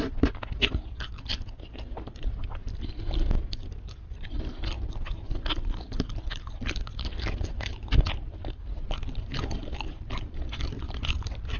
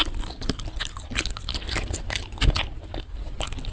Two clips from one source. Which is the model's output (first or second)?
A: first